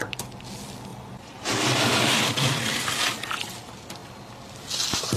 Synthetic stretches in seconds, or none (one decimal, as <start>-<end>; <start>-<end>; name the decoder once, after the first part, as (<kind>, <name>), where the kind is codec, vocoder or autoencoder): 0.9-2.8 (vocoder, BigVGAN v2)